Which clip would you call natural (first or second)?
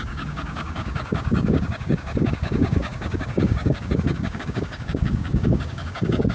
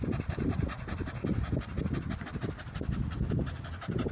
second